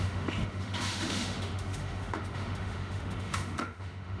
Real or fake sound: fake